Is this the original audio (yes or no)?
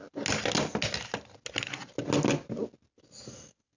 yes